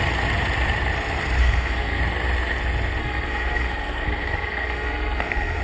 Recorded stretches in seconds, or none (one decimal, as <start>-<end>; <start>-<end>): 0.0-1.4; 2.0-3.0